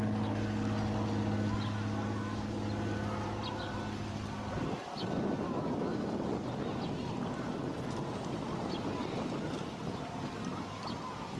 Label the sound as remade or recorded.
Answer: recorded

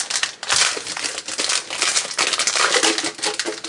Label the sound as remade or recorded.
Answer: recorded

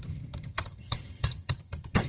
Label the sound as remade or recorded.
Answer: remade